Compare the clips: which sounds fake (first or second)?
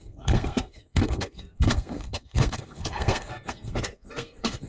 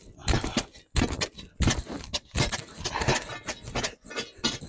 first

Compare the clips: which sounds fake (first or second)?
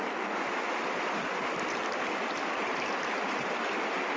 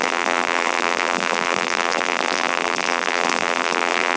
second